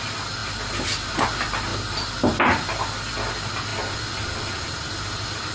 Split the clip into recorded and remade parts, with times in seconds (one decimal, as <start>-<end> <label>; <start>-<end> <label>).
0.0-5.5 recorded

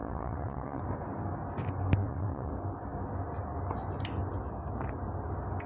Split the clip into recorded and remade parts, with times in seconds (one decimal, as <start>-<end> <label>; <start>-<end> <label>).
0.0-0.8 remade; 0.8-2.0 recorded; 2.0-2.5 remade; 2.5-5.7 recorded

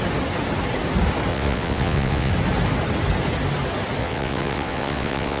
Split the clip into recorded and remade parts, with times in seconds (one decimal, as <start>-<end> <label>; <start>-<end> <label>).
0.0-1.3 recorded; 1.3-2.3 remade; 2.3-4.0 recorded; 4.0-5.4 remade

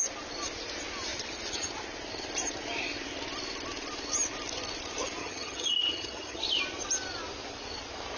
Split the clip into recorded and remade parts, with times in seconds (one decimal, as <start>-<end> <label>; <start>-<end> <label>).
0.0-5.2 recorded; 5.2-6.4 remade; 6.4-8.2 recorded